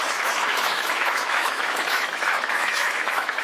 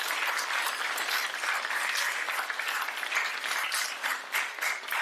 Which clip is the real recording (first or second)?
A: second